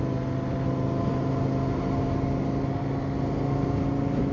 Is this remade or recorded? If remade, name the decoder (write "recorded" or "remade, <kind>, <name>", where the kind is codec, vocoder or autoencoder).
recorded